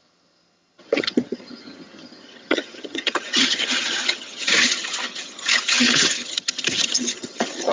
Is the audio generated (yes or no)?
yes